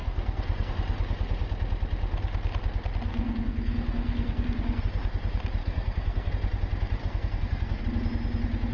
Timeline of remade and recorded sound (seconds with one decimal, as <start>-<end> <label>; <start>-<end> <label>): 0.0-0.7 remade; 0.7-3.1 recorded; 3.1-4.8 remade; 4.8-5.6 recorded; 5.6-6.3 remade; 6.3-7.0 recorded; 7.0-7.8 remade; 7.8-8.7 recorded